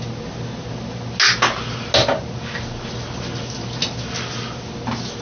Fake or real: real